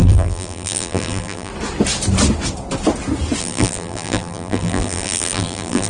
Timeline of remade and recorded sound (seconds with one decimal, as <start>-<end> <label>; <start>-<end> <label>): 0.0-1.5 remade; 1.5-3.4 recorded; 3.4-5.9 remade